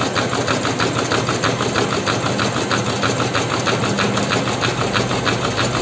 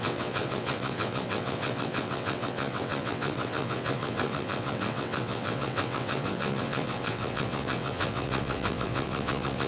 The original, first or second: first